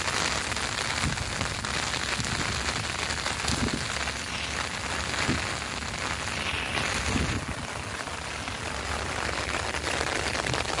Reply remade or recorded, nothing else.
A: recorded